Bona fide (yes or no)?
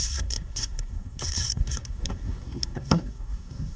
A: no